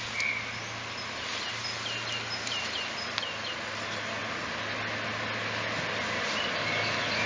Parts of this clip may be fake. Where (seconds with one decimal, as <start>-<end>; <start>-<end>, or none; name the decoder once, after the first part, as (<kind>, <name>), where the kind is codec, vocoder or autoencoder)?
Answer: none